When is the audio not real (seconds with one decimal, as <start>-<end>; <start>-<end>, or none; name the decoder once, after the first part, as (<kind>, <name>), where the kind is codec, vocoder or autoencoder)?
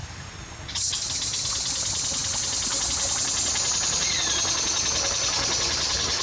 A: none